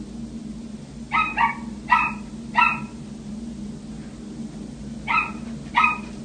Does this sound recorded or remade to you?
recorded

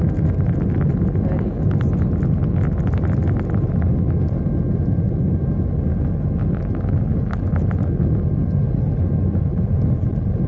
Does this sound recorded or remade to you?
recorded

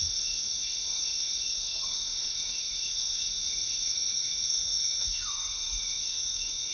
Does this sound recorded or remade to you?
remade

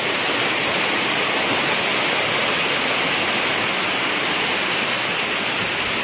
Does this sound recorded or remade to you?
recorded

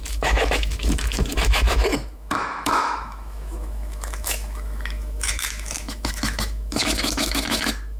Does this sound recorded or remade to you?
remade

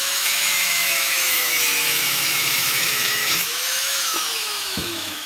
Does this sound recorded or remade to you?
remade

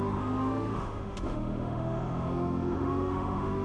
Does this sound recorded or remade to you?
remade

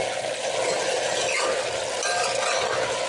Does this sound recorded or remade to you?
recorded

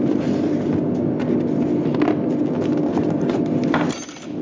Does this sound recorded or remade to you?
recorded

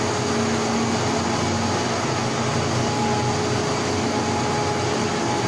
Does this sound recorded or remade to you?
recorded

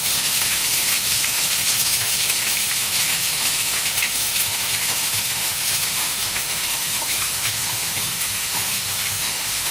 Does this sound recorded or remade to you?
remade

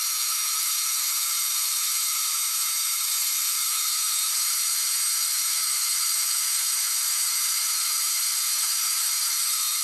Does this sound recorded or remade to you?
remade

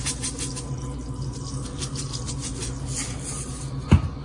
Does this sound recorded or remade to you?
recorded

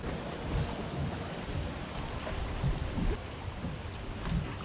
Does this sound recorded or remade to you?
recorded